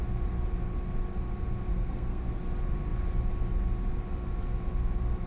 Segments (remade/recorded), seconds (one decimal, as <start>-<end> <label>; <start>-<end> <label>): 0.0-1.7 recorded; 1.7-2.4 remade; 2.4-5.3 recorded